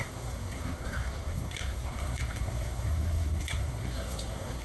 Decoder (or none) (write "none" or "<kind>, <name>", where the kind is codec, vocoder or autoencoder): codec, SNAC